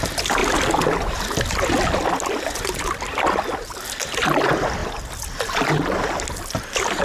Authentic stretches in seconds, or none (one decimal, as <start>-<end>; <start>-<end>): 0.0-7.0